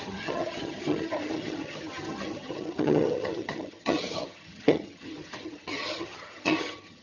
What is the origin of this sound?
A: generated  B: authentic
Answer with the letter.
A